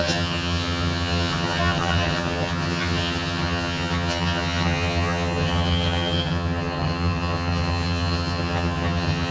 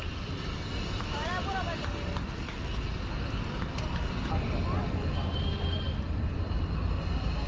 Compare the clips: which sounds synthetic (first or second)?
first